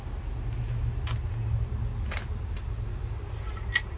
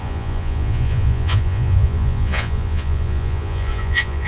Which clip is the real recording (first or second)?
first